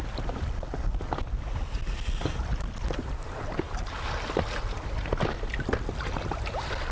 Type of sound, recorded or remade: recorded